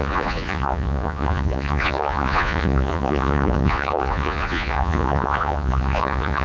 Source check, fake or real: fake